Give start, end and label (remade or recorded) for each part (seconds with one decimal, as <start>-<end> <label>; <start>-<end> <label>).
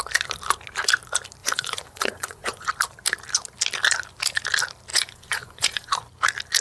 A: 0.0-1.4 recorded; 1.4-2.7 remade; 2.7-4.9 recorded; 4.9-5.9 remade; 5.9-6.6 recorded